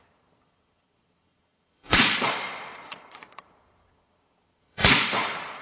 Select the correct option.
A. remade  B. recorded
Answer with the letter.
A